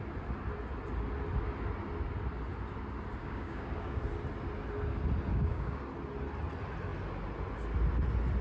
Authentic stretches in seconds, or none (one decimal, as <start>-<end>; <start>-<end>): 0.0-3.2; 4.0-5.3; 5.8-8.4